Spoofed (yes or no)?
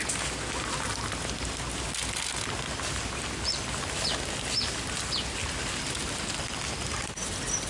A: no